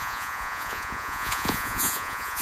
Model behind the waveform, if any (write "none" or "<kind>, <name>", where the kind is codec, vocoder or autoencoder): vocoder, Vocos